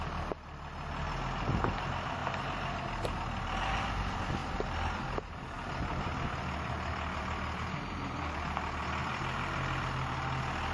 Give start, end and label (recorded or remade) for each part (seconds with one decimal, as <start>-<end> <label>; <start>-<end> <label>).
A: 0.0-10.7 recorded